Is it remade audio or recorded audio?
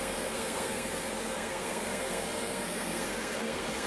remade